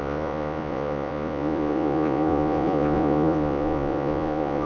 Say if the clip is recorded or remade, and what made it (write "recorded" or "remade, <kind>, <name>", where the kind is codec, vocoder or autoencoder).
remade, vocoder, Vocos